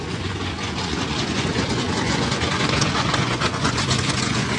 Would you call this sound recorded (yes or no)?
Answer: no